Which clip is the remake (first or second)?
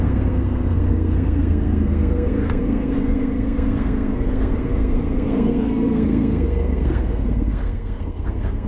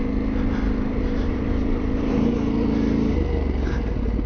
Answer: first